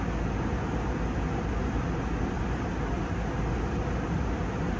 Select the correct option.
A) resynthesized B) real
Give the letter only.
B